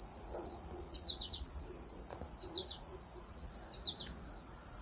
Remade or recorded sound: remade